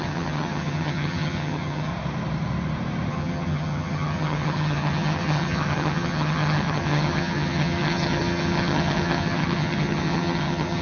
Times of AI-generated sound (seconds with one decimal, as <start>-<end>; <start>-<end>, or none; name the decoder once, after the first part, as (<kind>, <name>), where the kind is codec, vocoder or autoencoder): 0.0-1.9 (vocoder, HiFi-GAN); 3.1-10.8